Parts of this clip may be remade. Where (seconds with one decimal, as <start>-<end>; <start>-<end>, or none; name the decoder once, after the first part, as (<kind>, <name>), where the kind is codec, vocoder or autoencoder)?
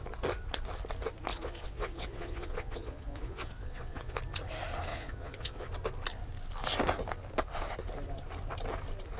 1.3-4.2 (vocoder, Vocos); 4.9-5.7